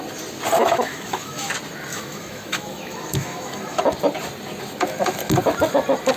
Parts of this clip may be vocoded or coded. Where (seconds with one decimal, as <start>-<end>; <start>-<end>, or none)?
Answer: 0.6-1.5; 1.9-3.8